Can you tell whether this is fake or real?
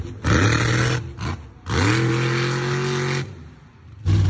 real